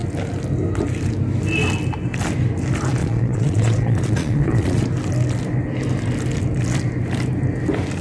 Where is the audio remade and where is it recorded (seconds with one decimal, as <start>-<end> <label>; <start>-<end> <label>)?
0.0-3.0 recorded; 3.0-4.8 remade; 4.8-8.0 recorded